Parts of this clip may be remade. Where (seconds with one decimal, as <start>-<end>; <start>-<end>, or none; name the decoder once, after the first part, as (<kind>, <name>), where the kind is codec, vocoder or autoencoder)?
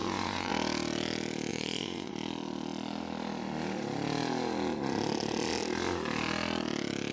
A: 0.0-0.5 (vocoder, Vocos); 1.5-2.1